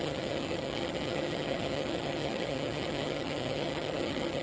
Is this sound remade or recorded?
remade